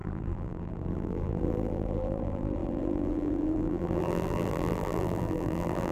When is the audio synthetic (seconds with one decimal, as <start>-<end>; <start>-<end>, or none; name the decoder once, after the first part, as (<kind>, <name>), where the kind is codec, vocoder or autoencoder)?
0.0-5.9 (vocoder, BigVGAN v2)

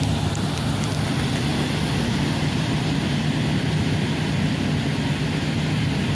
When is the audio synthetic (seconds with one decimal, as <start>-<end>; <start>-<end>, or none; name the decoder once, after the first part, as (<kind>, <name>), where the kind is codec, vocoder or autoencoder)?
1.5-4.7 (vocoder, BigVGAN v2)

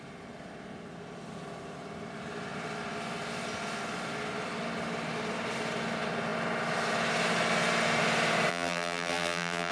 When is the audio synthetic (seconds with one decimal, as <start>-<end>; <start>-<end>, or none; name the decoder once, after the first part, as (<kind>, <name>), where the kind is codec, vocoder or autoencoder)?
8.5-9.7 (vocoder, BigVGAN v2)

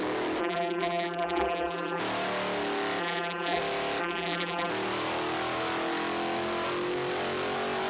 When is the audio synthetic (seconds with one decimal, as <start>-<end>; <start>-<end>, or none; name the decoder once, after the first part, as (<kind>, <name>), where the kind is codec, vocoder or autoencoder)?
0.4-2.0 (vocoder, BigVGAN v2); 3.0-3.6; 4.0-4.7

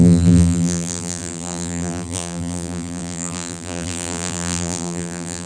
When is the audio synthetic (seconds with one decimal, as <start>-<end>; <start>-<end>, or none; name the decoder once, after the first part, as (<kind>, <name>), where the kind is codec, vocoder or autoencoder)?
0.0-5.4 (vocoder, BigVGAN v2)

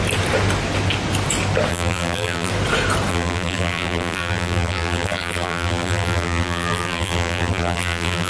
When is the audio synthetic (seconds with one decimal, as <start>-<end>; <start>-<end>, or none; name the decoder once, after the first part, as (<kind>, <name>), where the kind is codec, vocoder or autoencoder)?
1.7-2.5 (vocoder, BigVGAN v2); 3.1-8.3

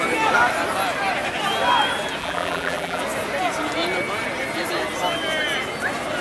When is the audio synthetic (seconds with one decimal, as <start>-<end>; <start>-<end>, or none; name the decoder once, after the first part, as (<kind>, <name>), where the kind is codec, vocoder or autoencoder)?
2.2-3.0 (vocoder, BigVGAN v2)

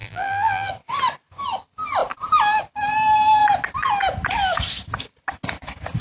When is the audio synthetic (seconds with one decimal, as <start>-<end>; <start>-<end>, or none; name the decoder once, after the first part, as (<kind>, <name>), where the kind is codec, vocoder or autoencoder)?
0.0-0.7 (vocoder, BigVGAN v2)